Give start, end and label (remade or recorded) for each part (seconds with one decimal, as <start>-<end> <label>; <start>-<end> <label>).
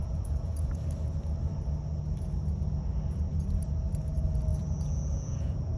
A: 0.0-0.7 remade; 0.7-4.5 recorded; 4.5-5.8 remade